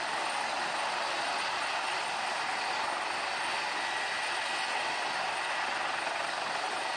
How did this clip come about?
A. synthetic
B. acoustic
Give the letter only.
A